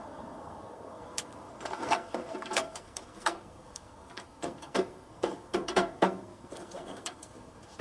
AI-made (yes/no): yes